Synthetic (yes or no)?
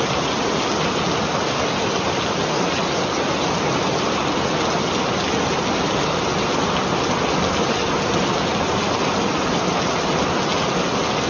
no